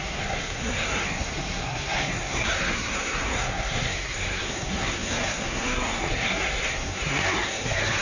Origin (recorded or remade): remade